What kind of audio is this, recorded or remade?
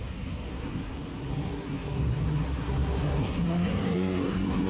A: remade